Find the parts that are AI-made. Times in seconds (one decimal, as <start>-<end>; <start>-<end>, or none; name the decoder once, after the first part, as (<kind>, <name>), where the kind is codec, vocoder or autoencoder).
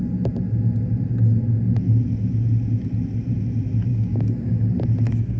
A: 3.9-4.5 (codec, DAC)